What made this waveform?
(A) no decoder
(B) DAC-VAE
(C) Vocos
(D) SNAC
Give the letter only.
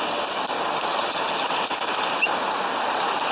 A